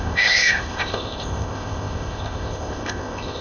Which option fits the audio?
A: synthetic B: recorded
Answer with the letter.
A